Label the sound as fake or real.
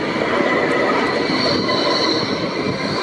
real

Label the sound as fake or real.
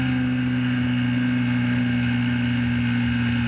real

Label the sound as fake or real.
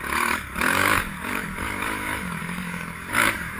fake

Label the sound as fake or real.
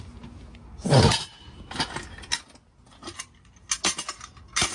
real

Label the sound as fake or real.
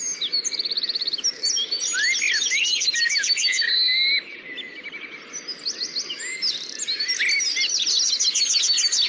real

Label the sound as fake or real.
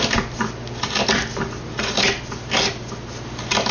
real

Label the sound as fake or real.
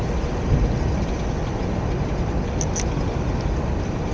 real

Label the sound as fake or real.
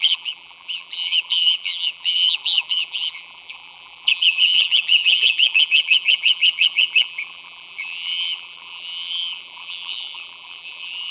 fake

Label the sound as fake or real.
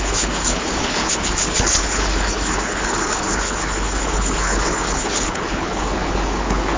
fake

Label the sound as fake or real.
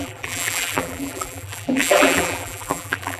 fake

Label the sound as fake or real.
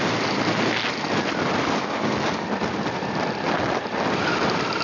real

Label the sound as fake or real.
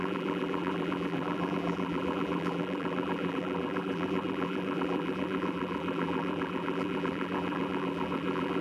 fake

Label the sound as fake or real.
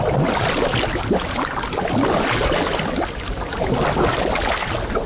real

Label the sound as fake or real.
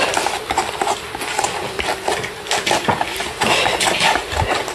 real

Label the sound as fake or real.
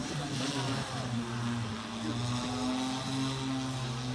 real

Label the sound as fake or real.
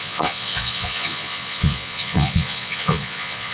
fake